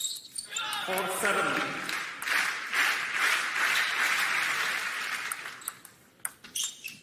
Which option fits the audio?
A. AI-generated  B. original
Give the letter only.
B